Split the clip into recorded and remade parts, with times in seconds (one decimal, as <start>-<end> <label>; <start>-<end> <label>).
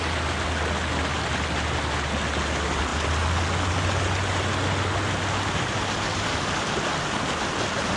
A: 0.0-8.0 recorded